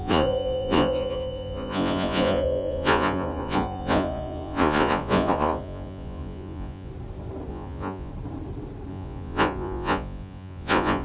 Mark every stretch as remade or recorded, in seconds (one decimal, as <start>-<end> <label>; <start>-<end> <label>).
0.0-6.9 remade; 6.9-7.5 recorded; 7.5-8.1 remade; 8.1-8.9 recorded; 8.9-11.0 remade